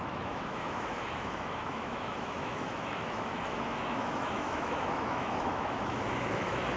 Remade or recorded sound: remade